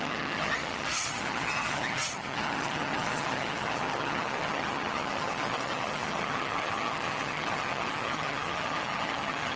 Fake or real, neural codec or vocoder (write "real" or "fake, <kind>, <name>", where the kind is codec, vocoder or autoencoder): fake, vocoder, HiFi-GAN